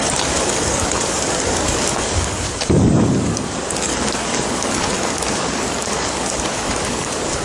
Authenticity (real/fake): fake